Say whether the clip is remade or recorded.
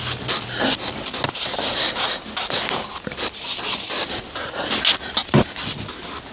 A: recorded